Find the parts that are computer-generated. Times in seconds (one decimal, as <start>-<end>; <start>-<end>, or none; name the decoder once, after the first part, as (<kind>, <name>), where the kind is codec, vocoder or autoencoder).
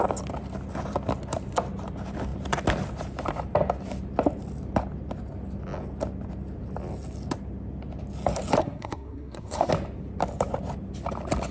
8.6-9.7 (codec, SNAC)